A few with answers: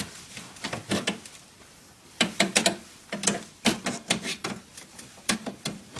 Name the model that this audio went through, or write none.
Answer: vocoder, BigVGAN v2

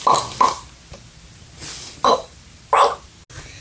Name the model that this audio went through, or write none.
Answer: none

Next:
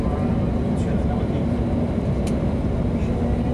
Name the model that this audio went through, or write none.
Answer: none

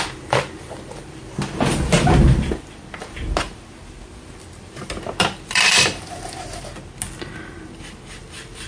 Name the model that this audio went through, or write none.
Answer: none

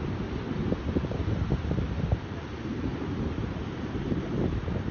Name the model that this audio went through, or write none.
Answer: vocoder, BigVGAN v2